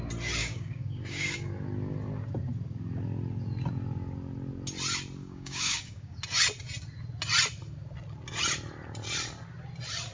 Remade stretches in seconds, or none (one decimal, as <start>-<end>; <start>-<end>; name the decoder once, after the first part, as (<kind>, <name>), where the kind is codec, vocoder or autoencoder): 0.4-1.5 (codec, DAC); 5.2-6.2